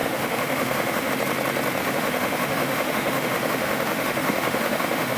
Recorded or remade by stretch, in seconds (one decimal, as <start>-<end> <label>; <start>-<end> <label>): 0.0-1.1 remade; 1.1-1.8 recorded; 1.8-5.2 remade